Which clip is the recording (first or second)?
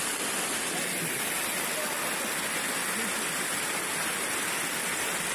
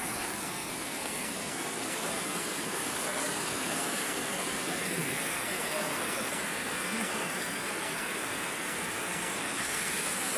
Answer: first